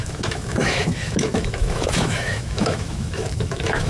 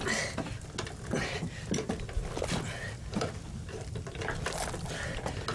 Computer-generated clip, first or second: first